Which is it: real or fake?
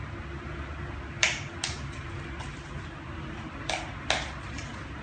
real